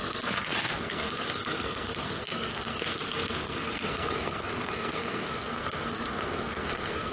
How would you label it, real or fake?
fake